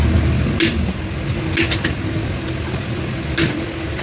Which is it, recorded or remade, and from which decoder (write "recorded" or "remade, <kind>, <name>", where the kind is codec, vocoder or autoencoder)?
recorded